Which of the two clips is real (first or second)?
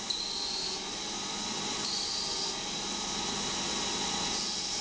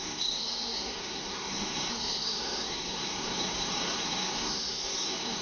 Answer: first